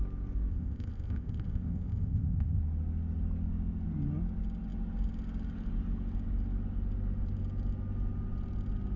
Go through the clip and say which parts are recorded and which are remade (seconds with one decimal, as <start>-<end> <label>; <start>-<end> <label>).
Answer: 0.0-0.5 recorded; 0.5-2.6 remade; 2.6-9.0 recorded

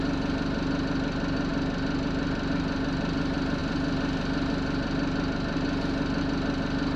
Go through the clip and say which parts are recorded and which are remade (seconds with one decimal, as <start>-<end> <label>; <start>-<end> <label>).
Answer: 0.0-7.0 recorded

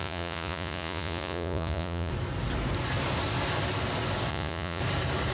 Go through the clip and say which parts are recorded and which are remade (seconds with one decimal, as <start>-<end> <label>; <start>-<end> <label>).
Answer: 0.0-2.1 remade; 2.1-4.3 recorded; 4.3-4.8 remade; 4.8-5.3 recorded

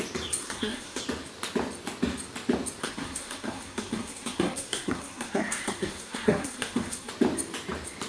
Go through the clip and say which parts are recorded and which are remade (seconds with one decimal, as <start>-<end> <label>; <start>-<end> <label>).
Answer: 0.0-0.4 recorded; 0.4-1.0 remade; 1.0-2.8 recorded; 2.8-7.1 remade; 7.1-8.1 recorded

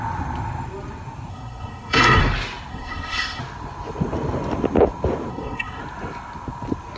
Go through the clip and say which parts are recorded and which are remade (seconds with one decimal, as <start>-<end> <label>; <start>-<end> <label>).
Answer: 0.0-1.3 recorded; 1.3-2.2 remade; 2.2-2.7 recorded; 2.7-3.4 remade; 3.4-5.3 recorded; 5.3-5.8 remade; 5.8-7.0 recorded

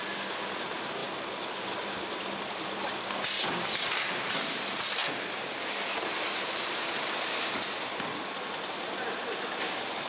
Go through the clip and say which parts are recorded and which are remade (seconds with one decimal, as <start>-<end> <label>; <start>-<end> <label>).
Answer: 0.0-1.0 recorded; 1.0-3.8 remade; 3.8-5.0 recorded; 5.0-5.5 remade; 5.5-10.1 recorded

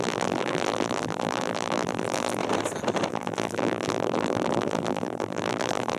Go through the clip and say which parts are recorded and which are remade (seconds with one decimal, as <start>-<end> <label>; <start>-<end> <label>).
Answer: 0.0-2.4 remade; 2.4-3.1 recorded; 3.1-6.0 remade